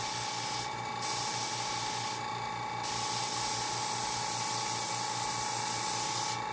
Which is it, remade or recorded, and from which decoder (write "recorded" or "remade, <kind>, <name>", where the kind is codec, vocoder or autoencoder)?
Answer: recorded